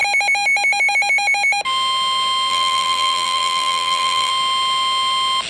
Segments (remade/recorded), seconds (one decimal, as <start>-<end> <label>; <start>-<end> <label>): 0.0-2.5 recorded; 2.5-4.3 remade; 4.3-5.5 recorded